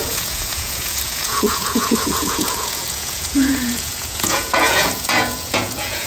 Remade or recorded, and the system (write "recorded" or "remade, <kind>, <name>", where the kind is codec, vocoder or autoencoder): remade, vocoder, Vocos